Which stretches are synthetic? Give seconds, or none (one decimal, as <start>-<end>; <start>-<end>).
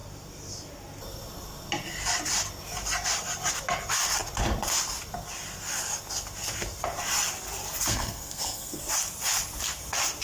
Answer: 7.9-8.8